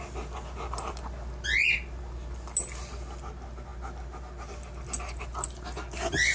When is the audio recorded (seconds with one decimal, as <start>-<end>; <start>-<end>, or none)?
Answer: 0.0-6.3

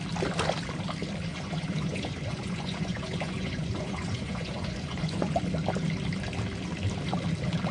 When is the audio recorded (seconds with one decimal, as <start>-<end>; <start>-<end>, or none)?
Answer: 0.0-1.3; 5.4-7.7

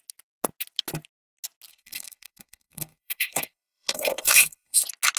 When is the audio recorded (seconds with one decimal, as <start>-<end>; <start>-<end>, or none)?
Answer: 0.0-1.7; 4.8-5.2